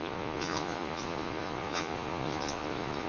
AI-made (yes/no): yes